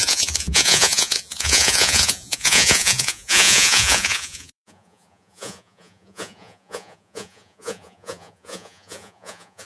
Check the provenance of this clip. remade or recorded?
remade